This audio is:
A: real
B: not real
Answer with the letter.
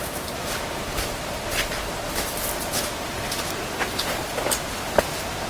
A